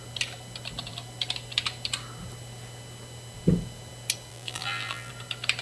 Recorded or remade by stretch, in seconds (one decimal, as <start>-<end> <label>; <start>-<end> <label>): 0.0-4.3 recorded; 4.3-5.1 remade; 5.1-5.6 recorded